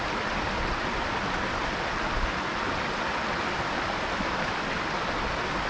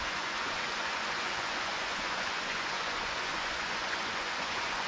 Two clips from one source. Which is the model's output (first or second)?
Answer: second